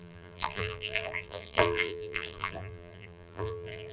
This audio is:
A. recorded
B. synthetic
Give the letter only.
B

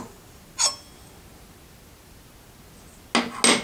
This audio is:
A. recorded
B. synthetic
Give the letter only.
A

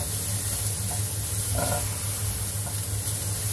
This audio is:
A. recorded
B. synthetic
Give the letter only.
A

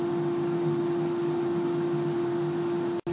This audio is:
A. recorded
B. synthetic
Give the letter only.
A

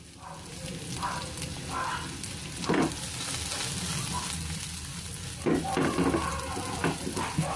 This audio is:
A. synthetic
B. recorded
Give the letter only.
B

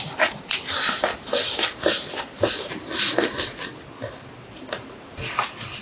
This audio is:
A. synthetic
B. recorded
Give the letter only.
B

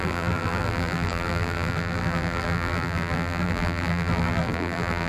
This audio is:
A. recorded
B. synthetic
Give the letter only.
B